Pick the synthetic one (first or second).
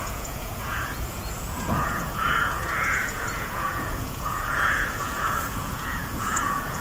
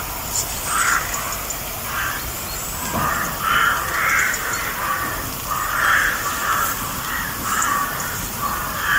first